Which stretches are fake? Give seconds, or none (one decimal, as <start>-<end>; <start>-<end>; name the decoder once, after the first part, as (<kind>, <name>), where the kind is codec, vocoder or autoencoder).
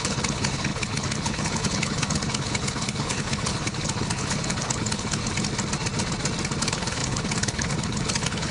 0.0-5.2 (codec, HILCodec); 6.6-8.5